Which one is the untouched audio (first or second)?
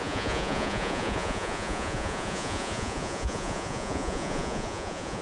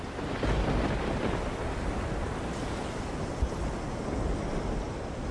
second